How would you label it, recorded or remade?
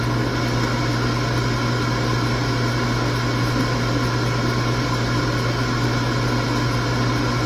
recorded